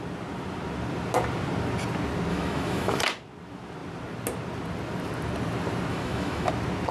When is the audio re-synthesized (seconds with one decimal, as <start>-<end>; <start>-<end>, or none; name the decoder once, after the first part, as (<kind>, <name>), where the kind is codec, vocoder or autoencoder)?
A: 2.3-3.0 (autoencoder, DAC-VAE); 5.9-6.5